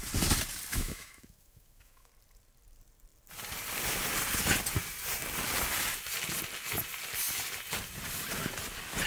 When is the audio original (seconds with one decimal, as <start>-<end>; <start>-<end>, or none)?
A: 0.0-0.7; 2.1-9.1